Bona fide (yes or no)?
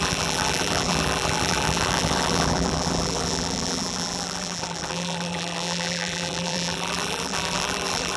no